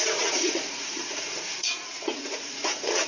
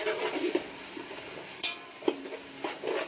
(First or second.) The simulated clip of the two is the first